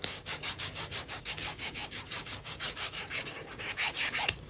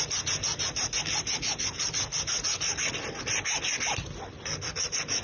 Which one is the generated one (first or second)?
first